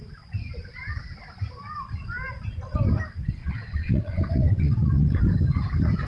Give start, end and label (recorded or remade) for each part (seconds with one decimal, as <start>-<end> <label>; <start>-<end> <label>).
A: 0.0-3.4 recorded; 3.4-5.2 remade; 5.2-6.1 recorded